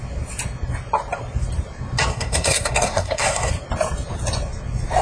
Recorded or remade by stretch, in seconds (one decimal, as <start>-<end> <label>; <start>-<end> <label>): 0.0-2.1 recorded; 2.1-3.5 remade; 3.5-5.0 recorded